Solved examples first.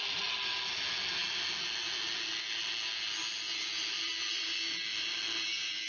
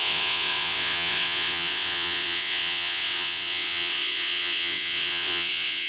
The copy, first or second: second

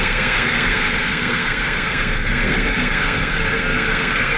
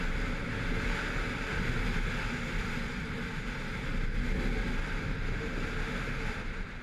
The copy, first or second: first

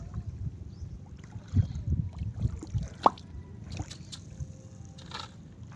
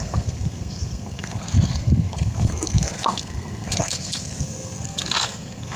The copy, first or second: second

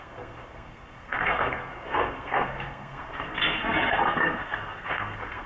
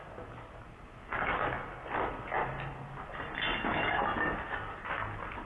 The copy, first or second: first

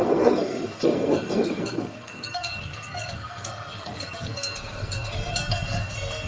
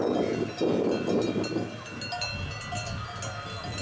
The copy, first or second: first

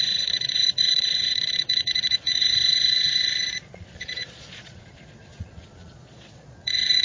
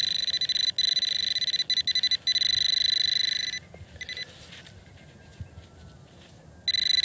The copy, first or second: first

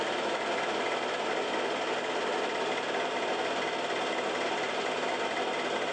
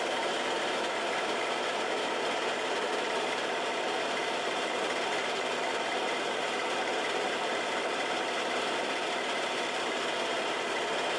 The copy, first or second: second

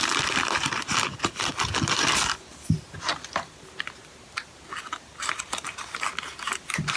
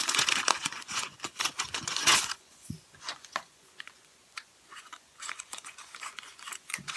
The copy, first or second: second